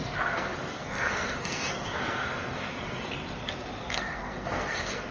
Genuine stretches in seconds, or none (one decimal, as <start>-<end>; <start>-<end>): 3.1-3.8